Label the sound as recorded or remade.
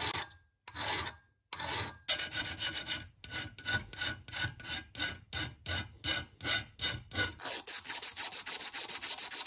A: recorded